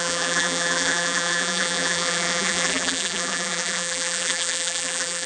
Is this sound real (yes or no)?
no